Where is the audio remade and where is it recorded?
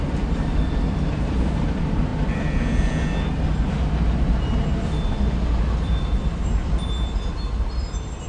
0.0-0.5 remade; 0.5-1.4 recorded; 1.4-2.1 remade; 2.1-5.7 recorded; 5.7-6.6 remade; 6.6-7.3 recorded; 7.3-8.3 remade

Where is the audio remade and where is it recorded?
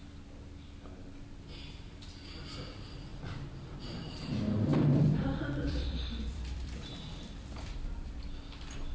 0.0-3.1 recorded; 3.1-4.3 remade; 4.3-4.7 recorded; 4.7-8.2 remade; 8.2-8.9 recorded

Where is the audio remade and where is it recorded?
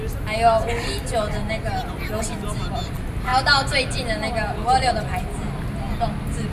0.0-6.5 recorded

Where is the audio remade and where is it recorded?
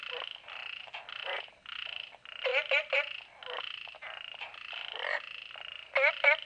0.0-6.5 recorded